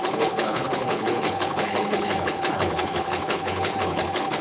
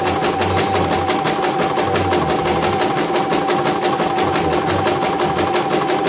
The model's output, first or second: first